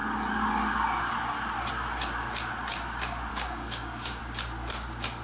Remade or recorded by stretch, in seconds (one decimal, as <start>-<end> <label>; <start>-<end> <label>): 0.0-3.3 recorded; 3.3-4.2 remade; 4.2-5.2 recorded